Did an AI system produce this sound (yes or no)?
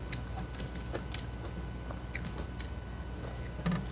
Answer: no